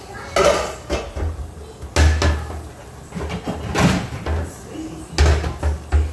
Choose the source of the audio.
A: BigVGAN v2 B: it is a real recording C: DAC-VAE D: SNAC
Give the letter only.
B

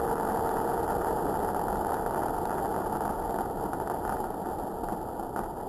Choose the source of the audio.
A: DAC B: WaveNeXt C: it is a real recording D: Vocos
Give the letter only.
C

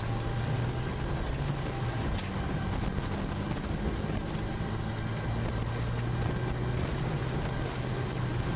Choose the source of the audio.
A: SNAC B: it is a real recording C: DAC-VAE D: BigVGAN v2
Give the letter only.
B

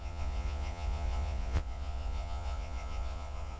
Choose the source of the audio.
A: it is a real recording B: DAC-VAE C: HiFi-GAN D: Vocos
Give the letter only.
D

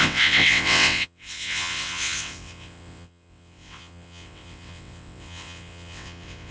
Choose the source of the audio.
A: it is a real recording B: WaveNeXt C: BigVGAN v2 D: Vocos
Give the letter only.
B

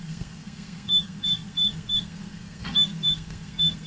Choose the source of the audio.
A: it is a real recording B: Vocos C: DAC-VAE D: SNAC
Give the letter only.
D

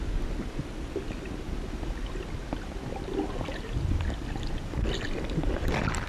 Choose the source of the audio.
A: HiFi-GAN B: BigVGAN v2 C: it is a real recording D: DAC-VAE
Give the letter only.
C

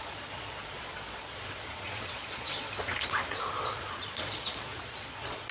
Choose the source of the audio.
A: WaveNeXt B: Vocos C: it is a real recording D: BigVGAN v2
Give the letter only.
B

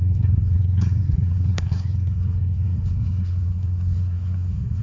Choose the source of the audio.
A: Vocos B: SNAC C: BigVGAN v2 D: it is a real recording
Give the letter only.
B